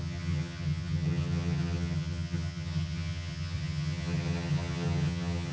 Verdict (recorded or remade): remade